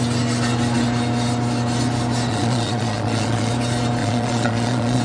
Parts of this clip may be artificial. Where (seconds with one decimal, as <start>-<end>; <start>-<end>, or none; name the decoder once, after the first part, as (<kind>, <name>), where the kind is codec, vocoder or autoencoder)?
2.3-3.5 (vocoder, Vocos); 4.0-5.0